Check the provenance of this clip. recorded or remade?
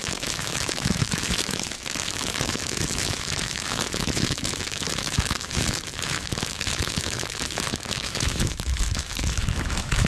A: remade